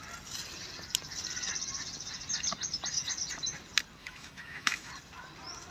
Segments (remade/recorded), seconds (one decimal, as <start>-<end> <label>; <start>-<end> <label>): 0.0-4.0 recorded; 4.0-4.9 remade; 4.9-5.7 recorded